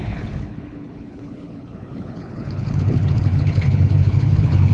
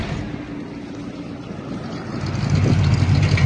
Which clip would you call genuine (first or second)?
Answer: second